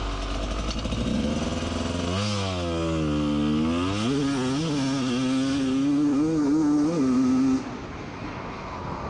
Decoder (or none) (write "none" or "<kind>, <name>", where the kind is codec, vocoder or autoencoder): none